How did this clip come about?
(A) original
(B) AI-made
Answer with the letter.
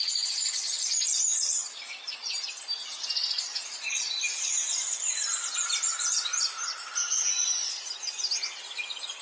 A